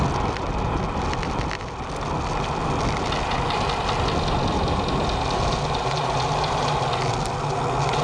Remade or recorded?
recorded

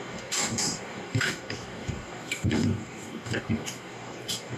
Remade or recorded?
remade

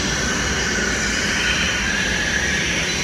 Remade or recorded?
recorded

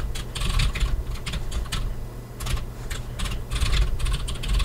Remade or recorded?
recorded